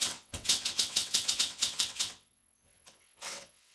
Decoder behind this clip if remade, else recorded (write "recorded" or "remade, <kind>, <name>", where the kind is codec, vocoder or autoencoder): remade, vocoder, WaveNeXt